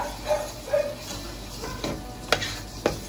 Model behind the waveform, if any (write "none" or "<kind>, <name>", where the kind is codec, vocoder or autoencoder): none